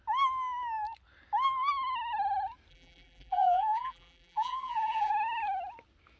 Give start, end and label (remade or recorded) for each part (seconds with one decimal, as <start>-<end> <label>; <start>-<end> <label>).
0.0-2.7 recorded; 2.7-5.1 remade; 5.1-6.2 recorded

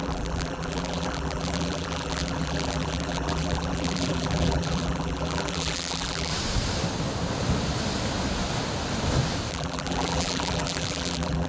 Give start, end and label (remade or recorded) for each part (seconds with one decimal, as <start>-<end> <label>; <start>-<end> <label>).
0.0-6.3 remade; 6.3-9.5 recorded; 9.5-11.5 remade

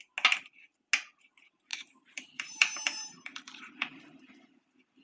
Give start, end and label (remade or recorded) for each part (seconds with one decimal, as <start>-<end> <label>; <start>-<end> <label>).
0.0-1.7 recorded; 1.7-5.0 remade

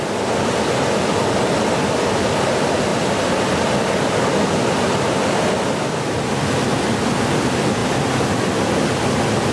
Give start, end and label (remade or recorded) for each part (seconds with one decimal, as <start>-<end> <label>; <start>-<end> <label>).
0.0-9.5 recorded

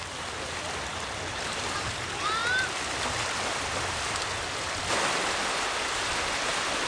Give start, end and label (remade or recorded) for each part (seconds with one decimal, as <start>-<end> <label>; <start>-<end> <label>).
0.0-6.9 recorded

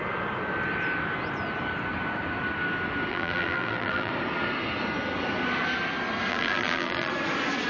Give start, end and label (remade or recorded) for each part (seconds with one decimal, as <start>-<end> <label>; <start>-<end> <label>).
0.0-3.1 recorded; 3.1-4.1 remade; 4.1-6.3 recorded; 6.3-7.1 remade; 7.1-7.7 recorded